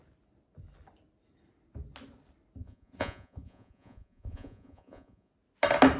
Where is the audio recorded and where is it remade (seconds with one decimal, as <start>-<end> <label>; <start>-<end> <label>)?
0.0-2.6 recorded; 2.6-5.3 remade; 5.3-6.0 recorded